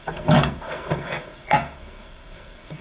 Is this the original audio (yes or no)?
no